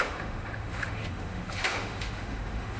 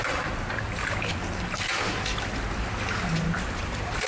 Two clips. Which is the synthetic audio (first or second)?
first